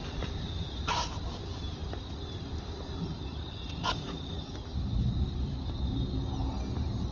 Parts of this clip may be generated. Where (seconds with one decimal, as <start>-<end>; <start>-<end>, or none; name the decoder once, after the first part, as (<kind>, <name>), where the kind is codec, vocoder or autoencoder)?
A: 0.0-0.9 (vocoder, BigVGAN v2); 1.8-6.0